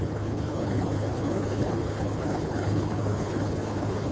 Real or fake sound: fake